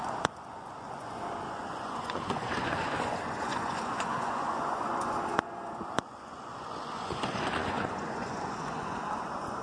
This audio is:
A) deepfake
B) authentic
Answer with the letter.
A